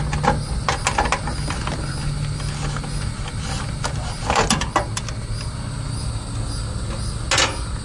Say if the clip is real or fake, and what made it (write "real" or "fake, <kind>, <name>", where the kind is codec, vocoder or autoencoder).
real